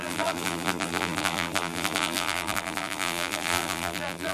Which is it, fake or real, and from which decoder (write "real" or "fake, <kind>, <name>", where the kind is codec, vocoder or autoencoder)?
fake, vocoder, BigVGAN v2